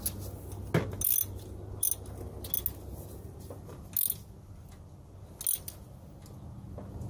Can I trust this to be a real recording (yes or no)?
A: yes